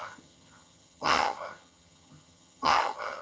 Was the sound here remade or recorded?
remade